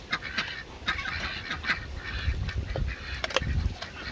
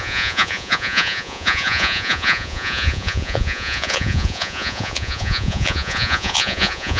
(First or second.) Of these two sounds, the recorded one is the first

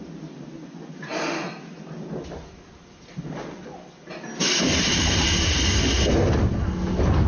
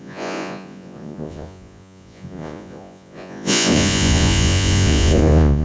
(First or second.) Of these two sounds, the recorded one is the first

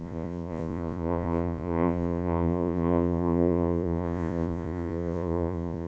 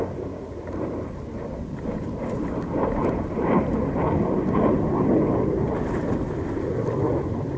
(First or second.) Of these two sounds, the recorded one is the second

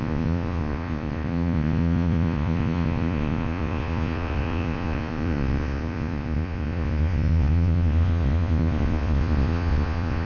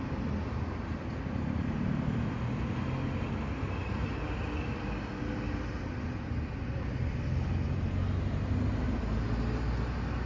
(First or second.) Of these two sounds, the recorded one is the second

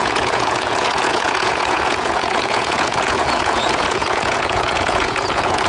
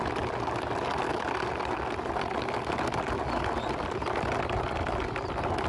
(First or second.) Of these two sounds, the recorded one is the second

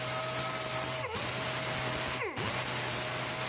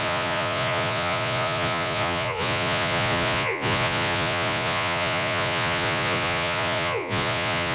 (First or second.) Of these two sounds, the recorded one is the first